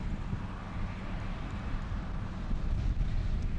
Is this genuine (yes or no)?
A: yes